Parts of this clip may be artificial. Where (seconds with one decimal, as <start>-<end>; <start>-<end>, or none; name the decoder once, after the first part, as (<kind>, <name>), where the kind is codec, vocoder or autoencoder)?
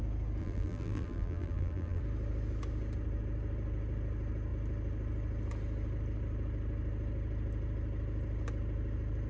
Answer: 0.4-2.0 (vocoder, BigVGAN v2)